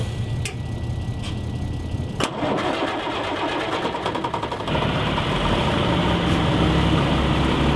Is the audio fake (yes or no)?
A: no